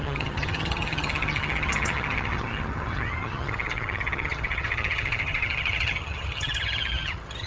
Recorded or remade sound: remade